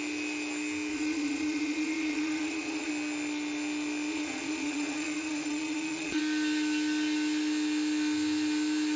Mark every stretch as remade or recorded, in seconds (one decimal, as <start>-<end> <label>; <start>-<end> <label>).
0.0-0.9 recorded; 0.9-2.9 remade; 2.9-4.1 recorded; 4.1-6.2 remade; 6.2-9.0 recorded